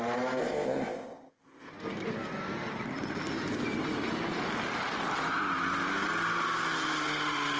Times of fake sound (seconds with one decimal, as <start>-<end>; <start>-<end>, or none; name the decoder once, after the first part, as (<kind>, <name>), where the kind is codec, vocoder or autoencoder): 0.4-1.7 (codec, ZipCodec)